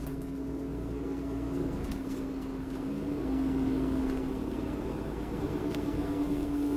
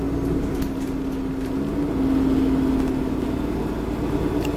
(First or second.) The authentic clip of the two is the second